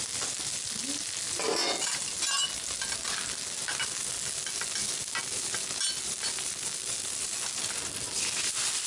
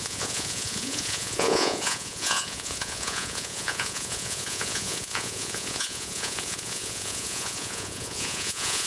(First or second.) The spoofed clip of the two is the second